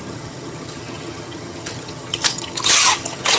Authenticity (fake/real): fake